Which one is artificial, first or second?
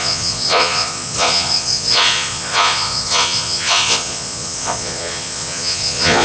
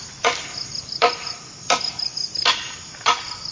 first